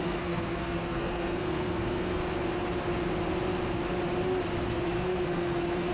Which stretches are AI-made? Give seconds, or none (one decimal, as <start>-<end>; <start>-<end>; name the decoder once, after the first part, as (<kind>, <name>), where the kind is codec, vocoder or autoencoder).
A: 0.0-2.2 (codec, SNAC); 4.6-5.9